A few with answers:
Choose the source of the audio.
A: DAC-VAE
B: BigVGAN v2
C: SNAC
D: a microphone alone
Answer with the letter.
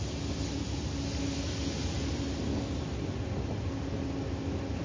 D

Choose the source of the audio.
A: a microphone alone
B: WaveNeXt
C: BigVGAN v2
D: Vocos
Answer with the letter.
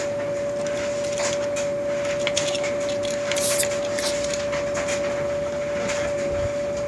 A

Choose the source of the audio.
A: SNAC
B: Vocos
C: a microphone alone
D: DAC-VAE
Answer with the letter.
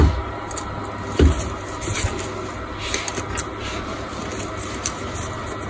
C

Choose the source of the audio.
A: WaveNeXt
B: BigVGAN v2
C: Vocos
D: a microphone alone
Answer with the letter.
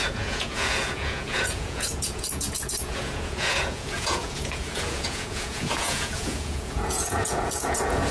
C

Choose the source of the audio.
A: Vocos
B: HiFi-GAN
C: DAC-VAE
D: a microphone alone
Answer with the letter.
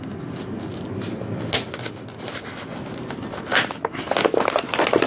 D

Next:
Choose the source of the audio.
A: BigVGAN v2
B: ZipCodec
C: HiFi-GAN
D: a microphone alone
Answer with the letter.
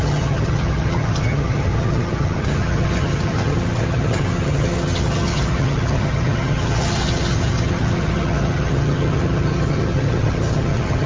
C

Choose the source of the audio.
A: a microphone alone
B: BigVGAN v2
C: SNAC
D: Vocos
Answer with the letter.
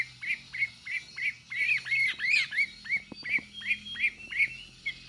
A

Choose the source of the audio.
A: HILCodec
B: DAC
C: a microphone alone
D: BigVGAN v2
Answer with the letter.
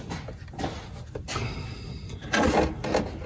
C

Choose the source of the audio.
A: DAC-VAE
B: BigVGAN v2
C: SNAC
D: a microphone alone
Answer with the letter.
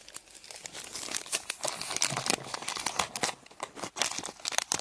D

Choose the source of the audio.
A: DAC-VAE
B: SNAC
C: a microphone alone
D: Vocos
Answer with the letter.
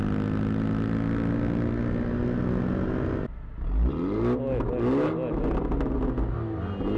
C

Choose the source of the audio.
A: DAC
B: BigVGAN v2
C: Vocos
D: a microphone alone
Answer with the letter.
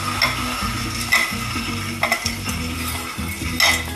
D